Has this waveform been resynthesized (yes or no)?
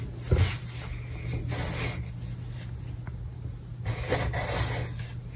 no